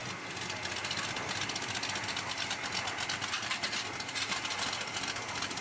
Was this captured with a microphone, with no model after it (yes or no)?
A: yes